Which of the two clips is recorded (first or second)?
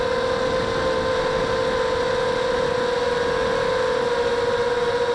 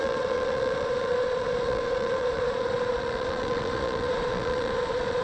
first